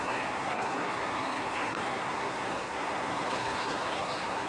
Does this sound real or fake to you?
fake